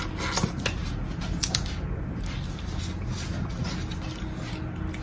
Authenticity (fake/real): real